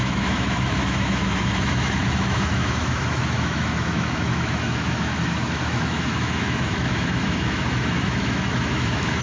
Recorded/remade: remade